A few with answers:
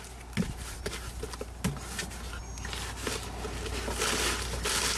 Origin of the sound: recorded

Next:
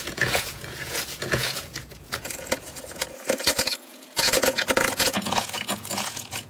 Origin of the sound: remade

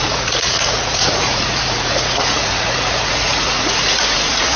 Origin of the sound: remade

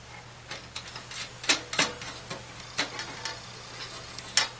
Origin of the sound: recorded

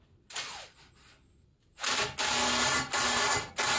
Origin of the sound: recorded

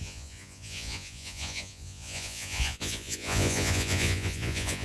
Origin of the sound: remade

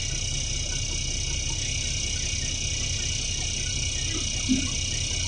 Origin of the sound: recorded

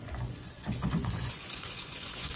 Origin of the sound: remade